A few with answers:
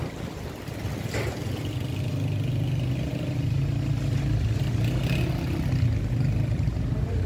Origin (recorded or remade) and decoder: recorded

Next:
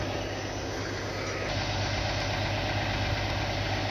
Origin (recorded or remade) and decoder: recorded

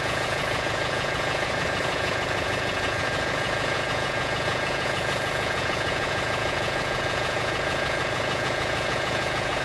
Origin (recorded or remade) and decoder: remade, vocoder, Vocos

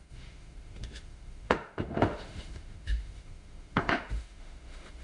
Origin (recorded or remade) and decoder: remade, autoencoder, DAC-VAE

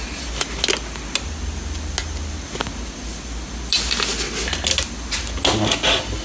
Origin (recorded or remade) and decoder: recorded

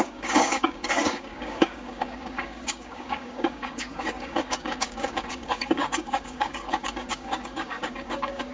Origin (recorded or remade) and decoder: remade, codec, DAC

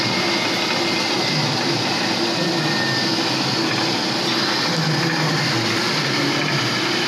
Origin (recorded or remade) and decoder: recorded